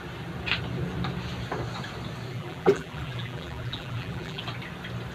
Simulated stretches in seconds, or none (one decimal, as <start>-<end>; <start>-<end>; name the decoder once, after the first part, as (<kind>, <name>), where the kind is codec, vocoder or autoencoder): 2.3-4.4 (vocoder, BigVGAN v2)